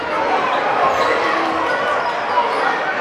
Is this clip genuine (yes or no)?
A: yes